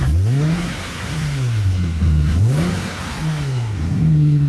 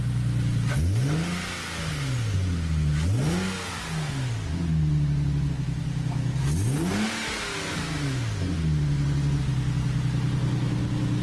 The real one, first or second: second